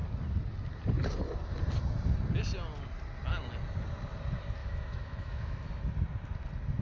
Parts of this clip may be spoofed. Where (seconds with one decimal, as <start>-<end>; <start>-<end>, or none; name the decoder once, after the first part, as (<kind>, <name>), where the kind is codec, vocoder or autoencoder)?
4.6-5.8 (autoencoder, DAC-VAE)